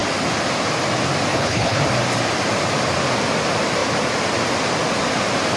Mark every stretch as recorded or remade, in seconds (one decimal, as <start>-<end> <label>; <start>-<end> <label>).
0.0-1.3 recorded; 1.3-1.8 remade; 1.8-5.6 recorded